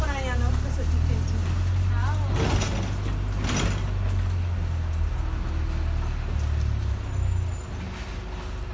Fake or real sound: real